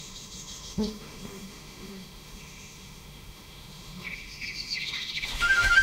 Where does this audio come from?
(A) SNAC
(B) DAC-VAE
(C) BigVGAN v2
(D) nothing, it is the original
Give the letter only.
B